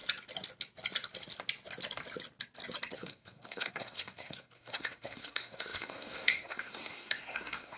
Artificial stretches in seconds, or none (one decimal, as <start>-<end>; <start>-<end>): 2.9-7.8